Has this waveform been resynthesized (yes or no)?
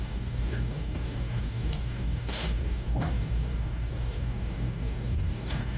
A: yes